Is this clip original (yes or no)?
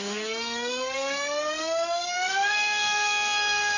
no